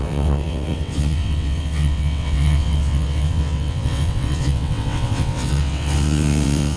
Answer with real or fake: fake